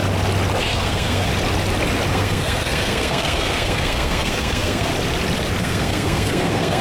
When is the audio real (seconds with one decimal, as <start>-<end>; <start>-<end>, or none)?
0.0-0.6; 1.3-2.1; 4.9-5.6